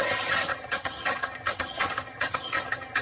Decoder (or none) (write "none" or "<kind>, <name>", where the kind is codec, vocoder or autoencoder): vocoder, HiFi-GAN